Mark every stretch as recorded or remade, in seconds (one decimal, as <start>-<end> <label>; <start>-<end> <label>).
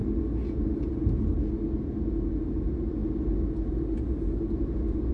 0.0-5.1 recorded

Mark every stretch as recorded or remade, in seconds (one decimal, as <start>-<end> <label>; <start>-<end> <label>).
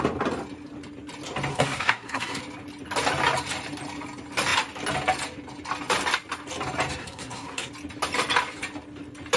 0.0-1.5 recorded; 1.5-2.4 remade; 2.4-7.0 recorded; 7.0-7.7 remade; 7.7-9.4 recorded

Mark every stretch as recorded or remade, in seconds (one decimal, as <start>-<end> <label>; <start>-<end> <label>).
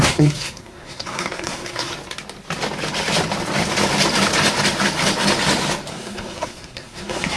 0.0-1.9 remade; 1.9-5.9 recorded; 5.9-7.4 remade